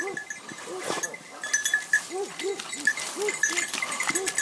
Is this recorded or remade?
recorded